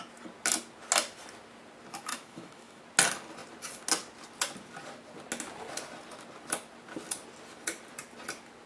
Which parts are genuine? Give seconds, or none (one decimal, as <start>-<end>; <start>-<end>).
0.0-2.1; 2.8-8.7